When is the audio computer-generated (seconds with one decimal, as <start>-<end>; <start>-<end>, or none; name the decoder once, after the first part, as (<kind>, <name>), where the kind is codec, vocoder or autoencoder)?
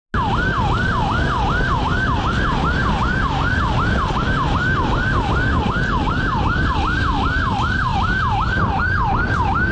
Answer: none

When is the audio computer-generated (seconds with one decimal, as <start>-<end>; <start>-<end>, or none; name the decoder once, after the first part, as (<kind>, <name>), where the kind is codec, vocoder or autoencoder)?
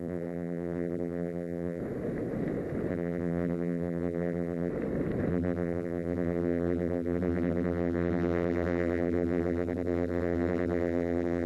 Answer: 0.0-1.8 (vocoder, BigVGAN v2); 2.9-4.7; 5.3-11.5